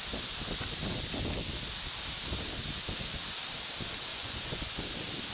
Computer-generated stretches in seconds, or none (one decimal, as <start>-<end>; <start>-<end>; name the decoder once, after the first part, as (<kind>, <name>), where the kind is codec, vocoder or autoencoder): 4.1-4.8 (vocoder, Vocos)